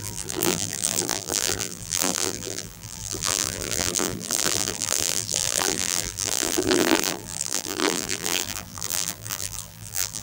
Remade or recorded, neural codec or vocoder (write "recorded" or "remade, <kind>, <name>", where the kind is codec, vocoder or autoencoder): remade, vocoder, BigVGAN v2